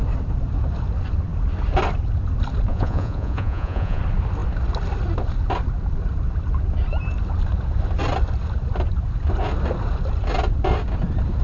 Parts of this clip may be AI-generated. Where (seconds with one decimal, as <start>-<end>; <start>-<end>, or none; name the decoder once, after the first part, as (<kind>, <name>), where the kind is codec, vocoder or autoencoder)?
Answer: 2.7-4.0 (vocoder, Vocos)